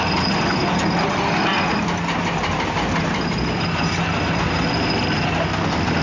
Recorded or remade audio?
recorded